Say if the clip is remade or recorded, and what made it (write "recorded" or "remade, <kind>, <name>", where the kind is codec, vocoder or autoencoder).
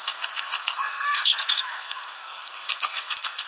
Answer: remade, codec, SNAC